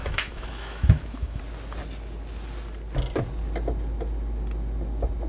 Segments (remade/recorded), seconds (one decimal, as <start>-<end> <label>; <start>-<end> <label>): 0.0-1.4 remade; 1.4-5.3 recorded